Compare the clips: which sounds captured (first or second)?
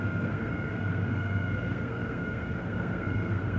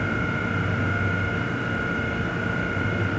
second